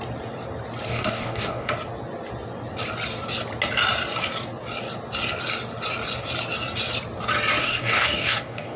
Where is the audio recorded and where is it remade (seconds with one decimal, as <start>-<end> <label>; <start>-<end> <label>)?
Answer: 0.0-0.9 recorded; 0.9-1.7 remade; 1.7-7.6 recorded; 7.6-8.8 remade